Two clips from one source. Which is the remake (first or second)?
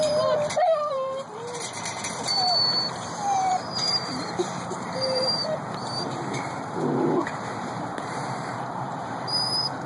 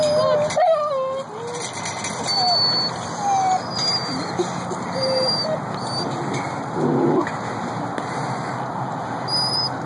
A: first